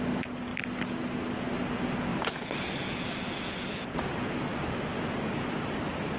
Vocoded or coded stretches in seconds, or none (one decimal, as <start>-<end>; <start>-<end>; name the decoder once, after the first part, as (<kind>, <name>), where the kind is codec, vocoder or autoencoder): 2.1-2.7 (vocoder, BigVGAN v2)